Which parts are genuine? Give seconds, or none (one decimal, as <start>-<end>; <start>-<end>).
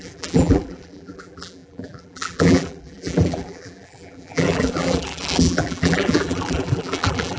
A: none